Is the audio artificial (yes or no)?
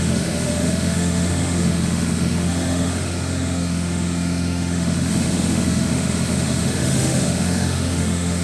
yes